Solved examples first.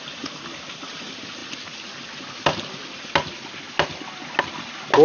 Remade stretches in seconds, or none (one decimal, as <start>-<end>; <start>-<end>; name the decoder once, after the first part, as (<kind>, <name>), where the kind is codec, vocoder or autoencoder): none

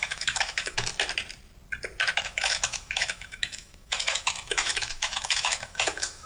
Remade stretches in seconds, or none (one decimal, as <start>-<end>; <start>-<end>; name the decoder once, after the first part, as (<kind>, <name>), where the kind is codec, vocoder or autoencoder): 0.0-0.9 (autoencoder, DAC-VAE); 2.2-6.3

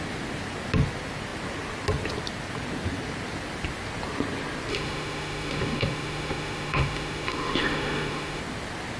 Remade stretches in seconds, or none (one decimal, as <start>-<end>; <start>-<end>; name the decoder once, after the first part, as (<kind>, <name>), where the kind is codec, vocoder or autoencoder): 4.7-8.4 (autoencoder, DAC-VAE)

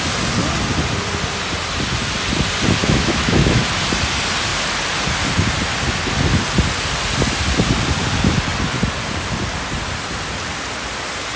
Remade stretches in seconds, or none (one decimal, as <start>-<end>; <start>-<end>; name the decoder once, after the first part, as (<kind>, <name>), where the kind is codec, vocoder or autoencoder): 2.8-3.6 (autoencoder, DAC-VAE)

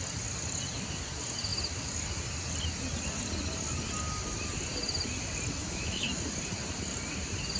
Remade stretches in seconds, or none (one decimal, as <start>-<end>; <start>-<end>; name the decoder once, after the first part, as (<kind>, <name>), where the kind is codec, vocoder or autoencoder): 5.6-6.2 (autoencoder, DAC-VAE)